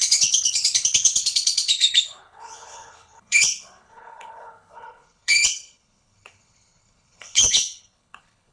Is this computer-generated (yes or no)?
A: yes